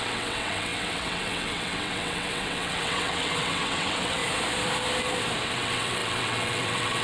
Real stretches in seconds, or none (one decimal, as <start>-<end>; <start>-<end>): 4.2-5.5